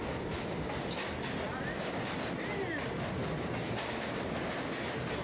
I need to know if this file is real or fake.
real